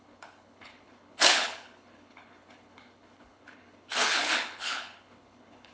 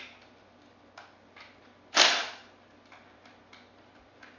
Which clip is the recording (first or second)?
second